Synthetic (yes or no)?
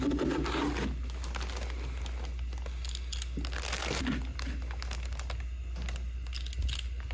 no